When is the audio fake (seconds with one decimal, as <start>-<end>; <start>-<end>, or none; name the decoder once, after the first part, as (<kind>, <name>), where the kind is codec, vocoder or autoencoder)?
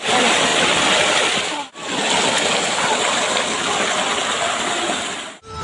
none